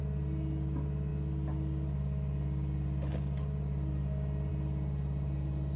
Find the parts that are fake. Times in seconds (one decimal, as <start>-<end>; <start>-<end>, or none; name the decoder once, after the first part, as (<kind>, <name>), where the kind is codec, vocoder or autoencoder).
none